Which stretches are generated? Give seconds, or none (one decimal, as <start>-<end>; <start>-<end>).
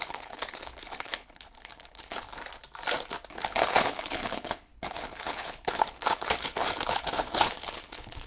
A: 0.0-2.4; 3.3-8.3